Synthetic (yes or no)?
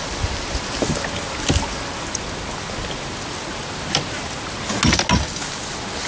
no